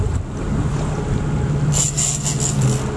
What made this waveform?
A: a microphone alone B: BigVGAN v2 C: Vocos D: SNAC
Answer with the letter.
A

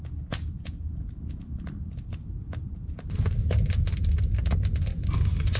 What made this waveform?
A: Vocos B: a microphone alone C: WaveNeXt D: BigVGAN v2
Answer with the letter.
B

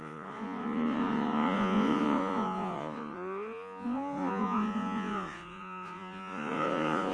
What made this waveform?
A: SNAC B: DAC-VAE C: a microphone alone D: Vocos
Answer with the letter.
D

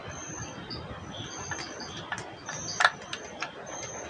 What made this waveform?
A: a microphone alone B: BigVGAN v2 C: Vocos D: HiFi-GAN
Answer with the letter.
A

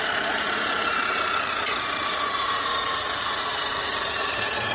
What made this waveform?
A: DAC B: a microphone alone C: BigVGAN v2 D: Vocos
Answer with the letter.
D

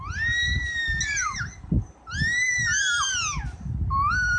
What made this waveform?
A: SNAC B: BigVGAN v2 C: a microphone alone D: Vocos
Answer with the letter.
C